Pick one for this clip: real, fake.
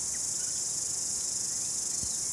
real